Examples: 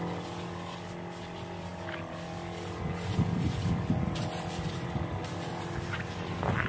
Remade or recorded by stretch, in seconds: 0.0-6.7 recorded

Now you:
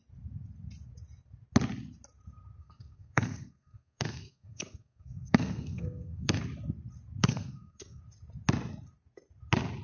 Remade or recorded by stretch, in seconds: 0.0-2.6 recorded; 2.6-6.4 remade; 6.4-7.2 recorded; 7.2-8.0 remade; 8.0-9.8 recorded